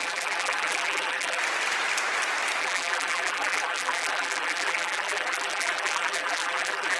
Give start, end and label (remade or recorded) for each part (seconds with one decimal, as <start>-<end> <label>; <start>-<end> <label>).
0.0-1.4 remade; 1.4-2.6 recorded; 2.6-7.0 remade